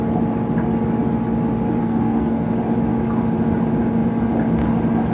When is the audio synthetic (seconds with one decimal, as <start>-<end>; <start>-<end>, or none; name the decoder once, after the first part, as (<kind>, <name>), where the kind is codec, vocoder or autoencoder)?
1.8-2.5 (codec, SNAC)